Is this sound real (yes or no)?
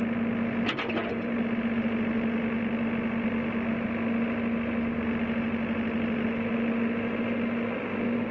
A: yes